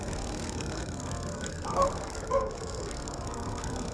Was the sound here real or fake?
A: fake